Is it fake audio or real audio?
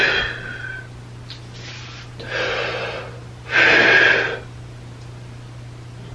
real